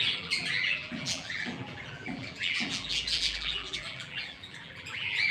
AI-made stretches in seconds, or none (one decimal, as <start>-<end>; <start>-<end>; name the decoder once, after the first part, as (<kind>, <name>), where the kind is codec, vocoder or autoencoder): 0.0-5.3 (vocoder, BigVGAN v2)